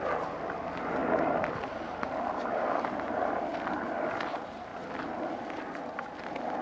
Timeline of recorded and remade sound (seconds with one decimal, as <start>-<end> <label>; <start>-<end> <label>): 0.0-6.6 recorded